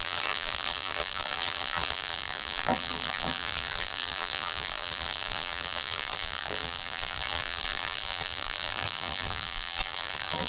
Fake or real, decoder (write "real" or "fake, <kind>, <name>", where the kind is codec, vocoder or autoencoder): fake, vocoder, BigVGAN v2